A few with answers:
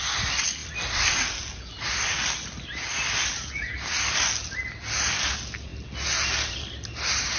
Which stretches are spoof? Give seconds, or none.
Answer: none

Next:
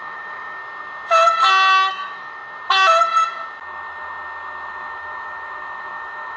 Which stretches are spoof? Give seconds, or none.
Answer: 0.0-0.6 (autoencoder, DAC-VAE); 1.9-2.4; 4.7-6.4